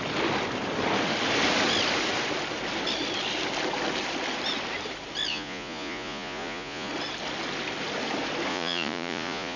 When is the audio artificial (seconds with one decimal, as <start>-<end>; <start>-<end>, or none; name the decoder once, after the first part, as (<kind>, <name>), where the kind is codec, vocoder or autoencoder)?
5.3-6.9 (vocoder, Vocos); 8.5-9.6